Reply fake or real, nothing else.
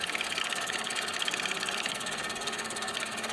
fake